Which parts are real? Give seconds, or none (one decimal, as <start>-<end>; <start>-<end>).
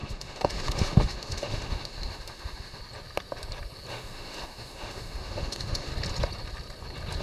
2.8-3.9; 5.9-7.2